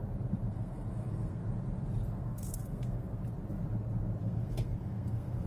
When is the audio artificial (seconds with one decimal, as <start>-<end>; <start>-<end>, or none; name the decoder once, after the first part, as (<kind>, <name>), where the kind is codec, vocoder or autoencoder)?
0.5-1.4 (codec, SNAC); 2.1-3.2; 4.2-5.5